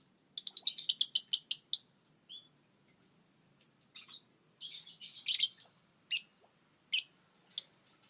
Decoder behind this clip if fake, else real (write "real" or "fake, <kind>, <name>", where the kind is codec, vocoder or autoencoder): real